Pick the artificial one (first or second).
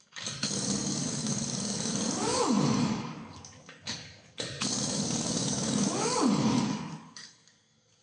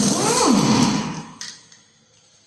first